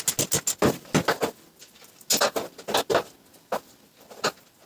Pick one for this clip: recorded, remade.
recorded